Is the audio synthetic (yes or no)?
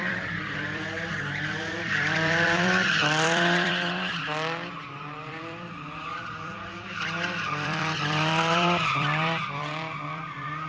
yes